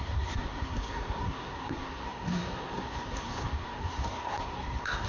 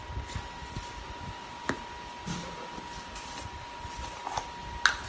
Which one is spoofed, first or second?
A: first